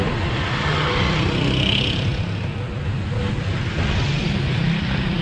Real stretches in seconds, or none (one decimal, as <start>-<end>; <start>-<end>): 0.0-5.2